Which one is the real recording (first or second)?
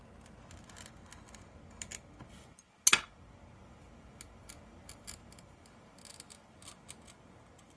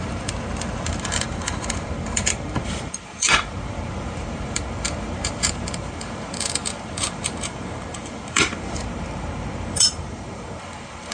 first